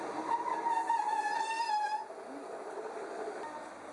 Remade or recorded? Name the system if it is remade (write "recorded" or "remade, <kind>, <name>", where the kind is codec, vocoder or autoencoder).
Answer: recorded